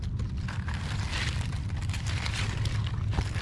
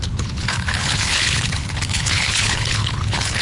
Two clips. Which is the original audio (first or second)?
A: first